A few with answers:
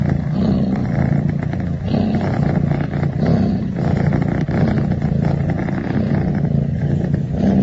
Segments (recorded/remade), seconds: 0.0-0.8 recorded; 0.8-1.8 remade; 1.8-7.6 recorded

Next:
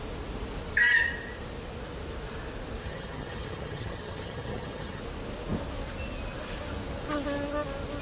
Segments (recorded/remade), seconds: 0.0-2.8 recorded; 2.8-5.0 remade; 5.0-8.0 recorded

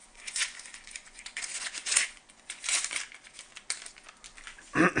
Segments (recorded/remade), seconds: 0.0-3.0 remade; 3.0-5.0 recorded